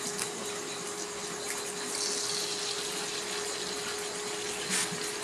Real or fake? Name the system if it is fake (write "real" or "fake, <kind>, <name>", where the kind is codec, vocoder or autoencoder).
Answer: real